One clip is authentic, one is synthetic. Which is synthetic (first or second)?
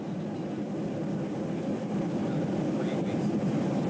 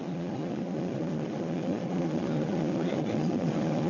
second